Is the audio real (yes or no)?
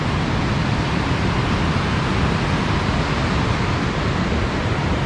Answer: yes